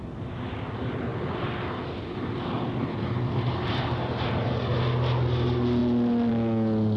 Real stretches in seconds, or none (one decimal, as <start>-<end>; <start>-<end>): 0.0-7.0